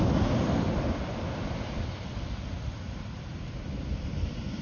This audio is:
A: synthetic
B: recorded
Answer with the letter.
B